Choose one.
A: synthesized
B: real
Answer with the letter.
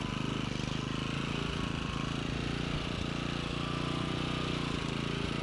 B